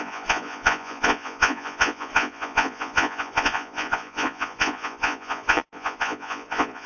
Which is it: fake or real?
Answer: fake